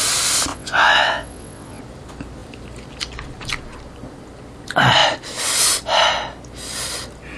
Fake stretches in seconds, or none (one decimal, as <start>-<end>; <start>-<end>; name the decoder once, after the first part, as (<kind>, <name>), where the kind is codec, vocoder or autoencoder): 0.5-1.8 (vocoder, WaveNeXt)